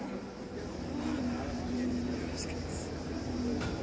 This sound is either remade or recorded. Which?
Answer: remade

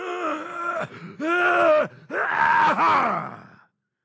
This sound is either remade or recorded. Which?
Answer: recorded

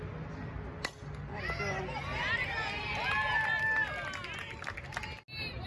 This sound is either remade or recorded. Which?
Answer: recorded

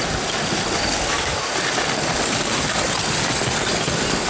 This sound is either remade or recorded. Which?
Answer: recorded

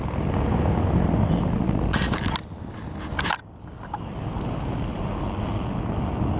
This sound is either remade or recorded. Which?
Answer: recorded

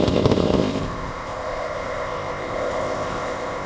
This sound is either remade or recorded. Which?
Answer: remade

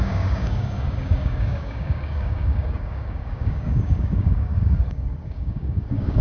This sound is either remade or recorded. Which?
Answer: remade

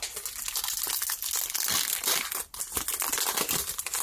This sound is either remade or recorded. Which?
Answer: recorded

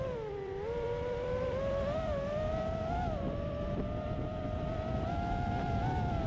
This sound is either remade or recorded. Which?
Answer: remade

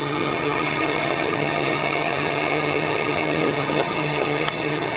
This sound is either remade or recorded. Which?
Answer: remade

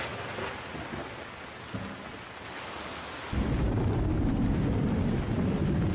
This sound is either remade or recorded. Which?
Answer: recorded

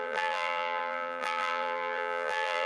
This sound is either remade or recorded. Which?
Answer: remade